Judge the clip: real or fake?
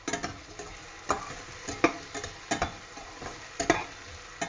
real